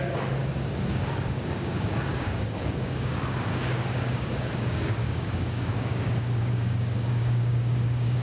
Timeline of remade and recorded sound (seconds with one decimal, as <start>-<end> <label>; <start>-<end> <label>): 0.0-8.2 remade